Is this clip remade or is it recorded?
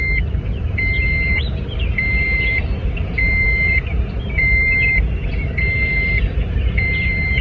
remade